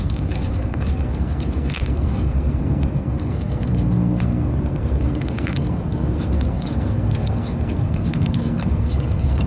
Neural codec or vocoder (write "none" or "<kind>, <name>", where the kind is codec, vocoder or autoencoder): codec, SNAC